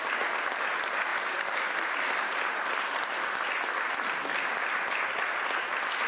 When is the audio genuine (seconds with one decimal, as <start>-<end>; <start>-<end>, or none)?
0.0-6.1